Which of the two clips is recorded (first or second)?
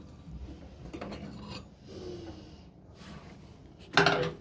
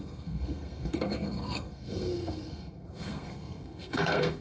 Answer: first